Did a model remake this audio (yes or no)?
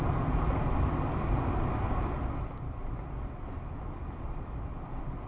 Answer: no